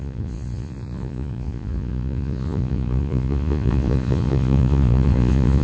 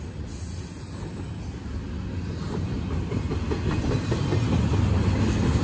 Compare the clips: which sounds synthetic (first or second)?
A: first